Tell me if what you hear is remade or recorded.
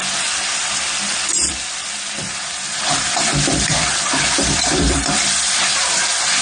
remade